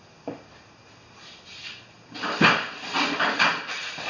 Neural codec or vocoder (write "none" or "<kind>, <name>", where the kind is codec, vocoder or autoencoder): none